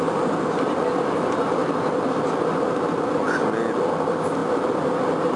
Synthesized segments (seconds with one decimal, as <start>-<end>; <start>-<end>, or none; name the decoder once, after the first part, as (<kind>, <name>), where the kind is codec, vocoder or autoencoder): 1.6-2.4 (vocoder, BigVGAN v2)